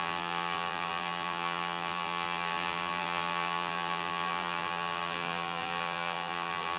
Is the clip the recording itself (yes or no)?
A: no